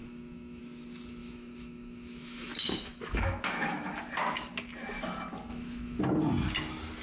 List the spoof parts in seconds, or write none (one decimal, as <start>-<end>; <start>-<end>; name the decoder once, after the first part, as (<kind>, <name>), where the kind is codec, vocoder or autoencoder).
0.0-0.6 (autoencoder, DAC-VAE); 1.2-4.0; 5.5-6.0